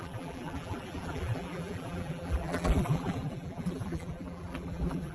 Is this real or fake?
fake